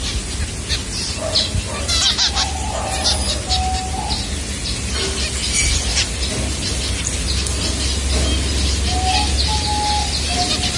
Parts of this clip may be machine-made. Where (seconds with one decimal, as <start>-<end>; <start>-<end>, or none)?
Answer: none